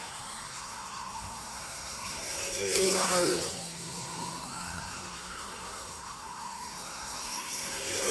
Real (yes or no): no